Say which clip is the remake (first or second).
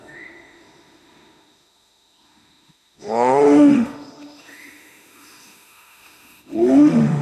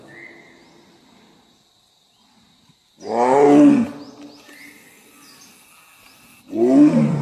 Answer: first